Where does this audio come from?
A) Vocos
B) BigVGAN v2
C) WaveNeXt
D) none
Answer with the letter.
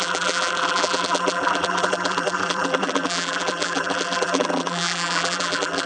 B